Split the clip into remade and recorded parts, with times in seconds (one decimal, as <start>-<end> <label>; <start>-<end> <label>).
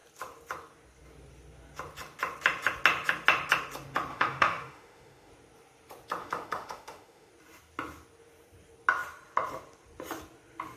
0.0-4.1 recorded; 4.1-5.3 remade; 5.3-6.2 recorded; 6.2-7.3 remade; 7.3-10.8 recorded